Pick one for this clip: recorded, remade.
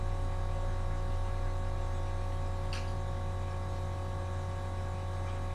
recorded